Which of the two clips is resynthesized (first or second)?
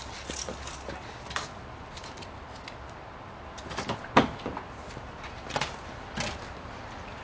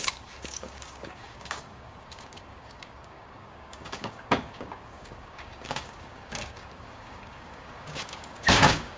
second